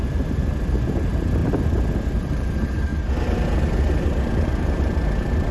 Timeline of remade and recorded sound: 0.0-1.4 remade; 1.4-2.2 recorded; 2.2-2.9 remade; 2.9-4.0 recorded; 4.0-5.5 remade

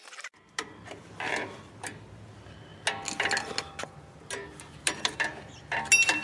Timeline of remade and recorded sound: 0.0-6.2 recorded